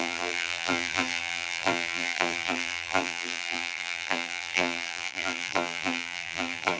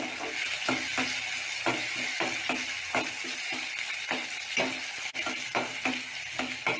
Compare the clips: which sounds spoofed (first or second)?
first